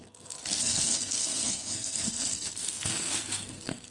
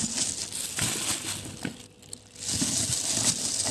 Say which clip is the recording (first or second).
second